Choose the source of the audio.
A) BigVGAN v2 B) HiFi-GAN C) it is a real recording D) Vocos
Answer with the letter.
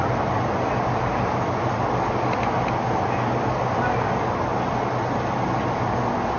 C